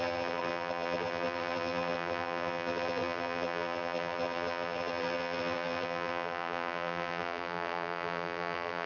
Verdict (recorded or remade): remade